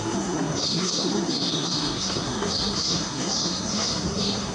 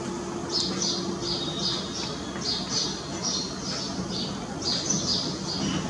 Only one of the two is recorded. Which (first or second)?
second